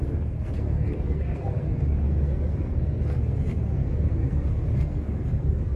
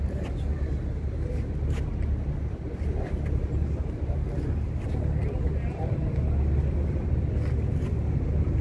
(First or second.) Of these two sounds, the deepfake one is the first